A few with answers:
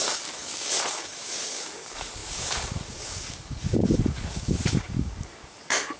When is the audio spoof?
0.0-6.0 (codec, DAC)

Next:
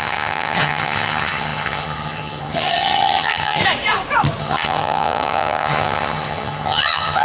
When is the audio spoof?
0.0-3.6 (vocoder, HiFi-GAN); 4.4-7.2

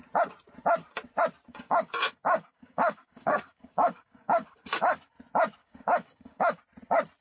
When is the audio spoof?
1.5-5.1 (codec, DAC); 5.6-6.6

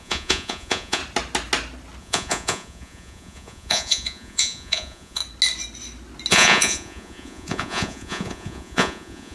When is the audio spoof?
0.0-1.0 (vocoder, Vocos); 2.0-5.2; 6.3-9.3

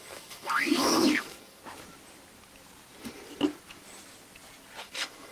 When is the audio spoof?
0.0-1.6 (codec, SNAC); 4.8-5.3